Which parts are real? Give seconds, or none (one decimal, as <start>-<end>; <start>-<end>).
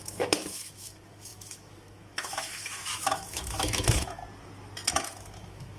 4.2-4.9